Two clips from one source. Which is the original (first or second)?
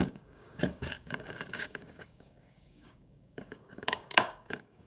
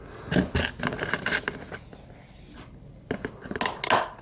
second